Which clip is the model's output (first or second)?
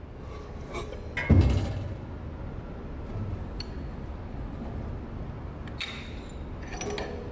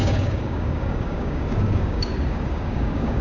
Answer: second